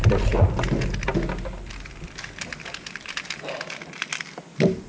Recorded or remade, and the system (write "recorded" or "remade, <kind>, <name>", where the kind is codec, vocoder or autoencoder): recorded